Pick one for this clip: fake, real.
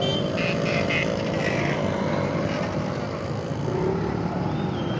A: real